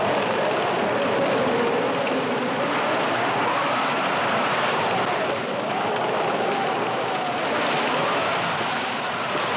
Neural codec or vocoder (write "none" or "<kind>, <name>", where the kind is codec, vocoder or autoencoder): none